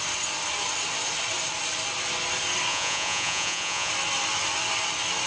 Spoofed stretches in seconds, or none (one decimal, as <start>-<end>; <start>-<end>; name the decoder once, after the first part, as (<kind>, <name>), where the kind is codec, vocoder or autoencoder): 2.7-3.9 (vocoder, Vocos)